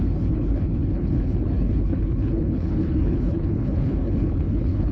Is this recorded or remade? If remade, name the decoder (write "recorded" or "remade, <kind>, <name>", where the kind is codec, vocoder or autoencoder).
remade, codec, HILCodec